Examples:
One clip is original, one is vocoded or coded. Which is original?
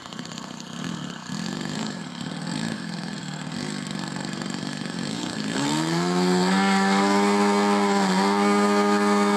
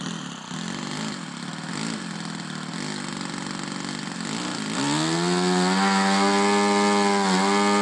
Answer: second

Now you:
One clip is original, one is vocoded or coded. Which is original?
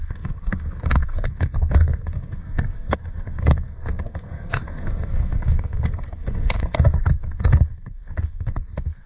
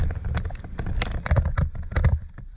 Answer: second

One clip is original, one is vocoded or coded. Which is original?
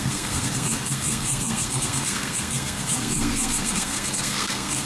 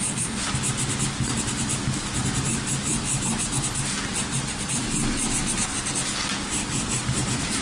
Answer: second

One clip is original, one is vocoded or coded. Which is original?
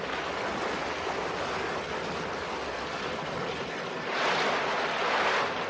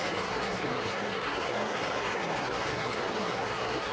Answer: first